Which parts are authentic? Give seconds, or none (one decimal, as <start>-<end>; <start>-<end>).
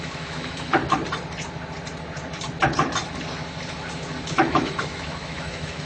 0.8-4.3